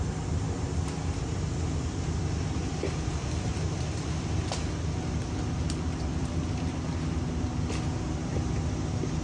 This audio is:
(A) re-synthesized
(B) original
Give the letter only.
B